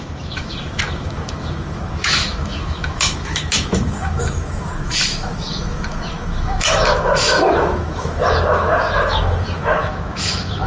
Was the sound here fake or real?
fake